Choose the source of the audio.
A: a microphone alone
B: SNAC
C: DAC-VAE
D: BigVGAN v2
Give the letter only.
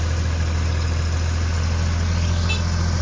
A